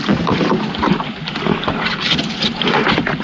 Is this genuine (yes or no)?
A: no